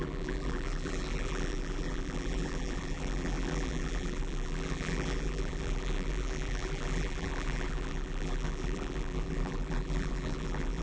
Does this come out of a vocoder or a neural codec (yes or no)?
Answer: yes